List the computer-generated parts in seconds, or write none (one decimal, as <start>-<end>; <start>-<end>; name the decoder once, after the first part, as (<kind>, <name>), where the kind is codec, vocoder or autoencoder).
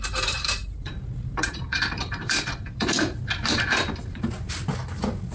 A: 0.0-3.2 (vocoder, BigVGAN v2)